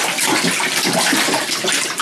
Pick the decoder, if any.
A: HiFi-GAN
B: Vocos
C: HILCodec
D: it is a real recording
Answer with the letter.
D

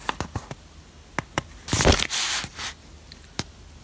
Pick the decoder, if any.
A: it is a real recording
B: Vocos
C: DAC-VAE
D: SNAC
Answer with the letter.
A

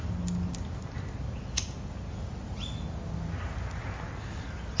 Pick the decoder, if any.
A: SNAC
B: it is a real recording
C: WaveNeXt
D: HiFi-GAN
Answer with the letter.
B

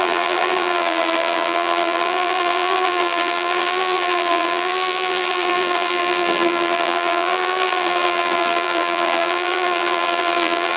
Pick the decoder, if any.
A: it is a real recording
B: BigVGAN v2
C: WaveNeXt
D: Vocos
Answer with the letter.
B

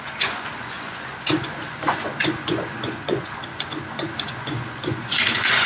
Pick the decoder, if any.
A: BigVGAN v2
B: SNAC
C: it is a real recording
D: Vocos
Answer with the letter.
D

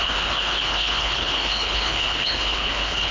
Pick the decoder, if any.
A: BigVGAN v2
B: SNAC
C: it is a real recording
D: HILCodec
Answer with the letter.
D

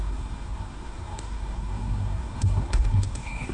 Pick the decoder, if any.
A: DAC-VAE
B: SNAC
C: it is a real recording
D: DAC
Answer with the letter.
B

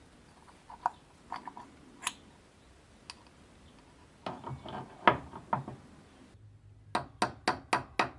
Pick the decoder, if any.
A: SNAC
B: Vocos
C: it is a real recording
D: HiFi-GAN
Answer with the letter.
C